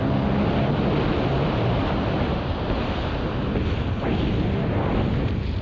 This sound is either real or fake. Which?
real